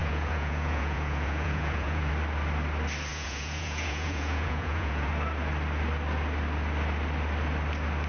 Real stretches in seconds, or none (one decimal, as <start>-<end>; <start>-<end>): 2.1-3.1; 5.1-8.1